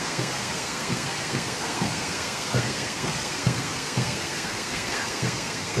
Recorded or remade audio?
remade